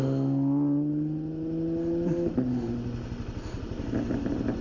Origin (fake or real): real